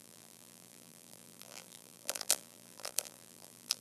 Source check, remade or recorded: remade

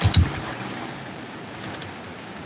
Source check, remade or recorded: remade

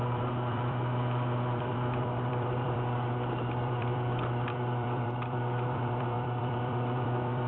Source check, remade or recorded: remade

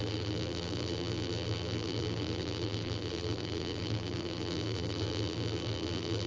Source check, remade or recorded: remade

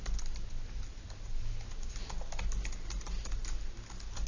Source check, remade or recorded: recorded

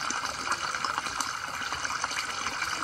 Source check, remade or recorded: recorded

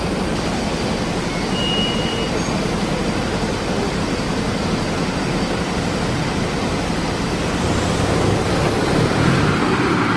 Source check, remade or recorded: remade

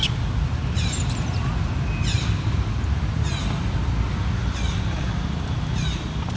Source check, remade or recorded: remade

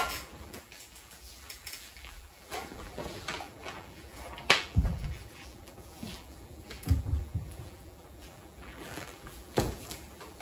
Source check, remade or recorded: remade